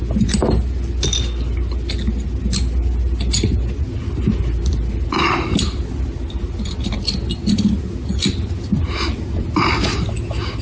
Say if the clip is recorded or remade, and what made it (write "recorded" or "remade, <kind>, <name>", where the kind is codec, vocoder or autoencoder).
recorded